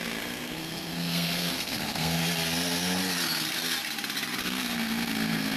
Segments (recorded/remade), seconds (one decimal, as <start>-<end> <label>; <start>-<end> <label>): 0.0-2.2 remade; 2.2-4.4 recorded; 4.4-5.6 remade